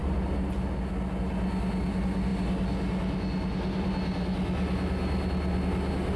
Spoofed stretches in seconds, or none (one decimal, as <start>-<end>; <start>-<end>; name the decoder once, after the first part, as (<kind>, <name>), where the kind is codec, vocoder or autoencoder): none